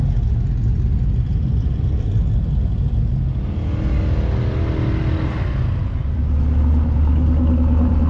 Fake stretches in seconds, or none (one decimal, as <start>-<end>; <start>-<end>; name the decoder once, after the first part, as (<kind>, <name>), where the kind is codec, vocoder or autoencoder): 0.7-4.0 (vocoder, BigVGAN v2); 5.8-6.4